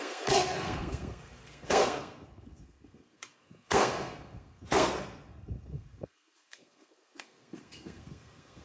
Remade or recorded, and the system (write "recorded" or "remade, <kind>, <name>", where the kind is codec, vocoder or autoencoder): remade, codec, SNAC